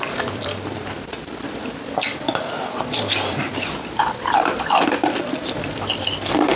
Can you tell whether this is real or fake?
fake